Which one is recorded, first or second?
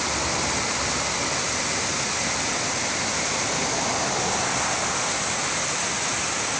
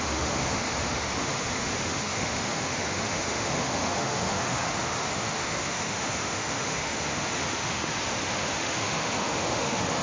first